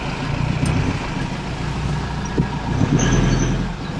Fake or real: real